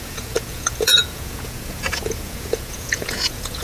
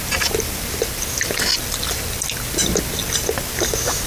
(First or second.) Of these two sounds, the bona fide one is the second